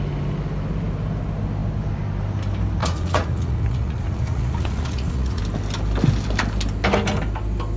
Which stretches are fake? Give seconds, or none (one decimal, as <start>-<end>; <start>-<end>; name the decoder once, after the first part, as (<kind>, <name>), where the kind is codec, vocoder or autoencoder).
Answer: 2.8-5.4 (vocoder, Vocos)